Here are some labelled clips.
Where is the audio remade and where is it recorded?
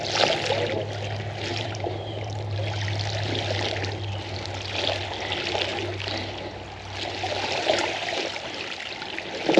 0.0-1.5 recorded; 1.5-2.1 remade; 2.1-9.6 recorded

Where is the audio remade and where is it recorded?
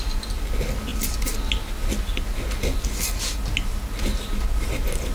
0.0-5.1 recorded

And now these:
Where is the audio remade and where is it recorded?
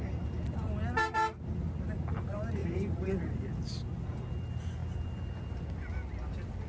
0.0-2.6 recorded; 2.6-3.4 remade; 3.4-6.7 recorded